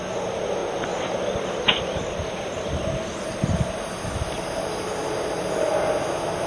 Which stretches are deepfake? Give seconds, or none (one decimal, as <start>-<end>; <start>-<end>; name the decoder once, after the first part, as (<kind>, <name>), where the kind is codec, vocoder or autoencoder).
none